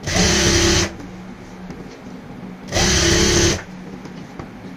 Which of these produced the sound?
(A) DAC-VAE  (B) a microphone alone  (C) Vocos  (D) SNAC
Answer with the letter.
B